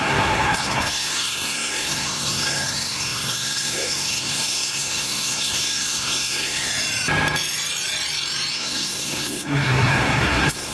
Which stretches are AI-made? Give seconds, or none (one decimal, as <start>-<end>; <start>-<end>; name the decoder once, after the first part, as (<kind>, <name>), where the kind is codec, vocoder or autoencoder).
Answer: 0.0-6.7 (codec, SNAC); 8.5-10.7